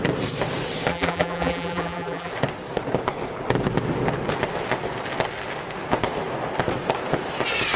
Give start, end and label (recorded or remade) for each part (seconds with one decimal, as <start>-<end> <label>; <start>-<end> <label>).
0.0-0.9 recorded; 0.9-2.3 remade; 2.3-7.8 recorded